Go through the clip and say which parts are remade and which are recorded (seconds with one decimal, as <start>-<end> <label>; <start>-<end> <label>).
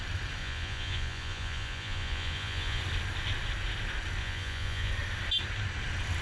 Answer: 0.0-0.4 recorded; 0.4-2.8 remade; 2.8-4.2 recorded; 4.2-4.9 remade; 4.9-6.2 recorded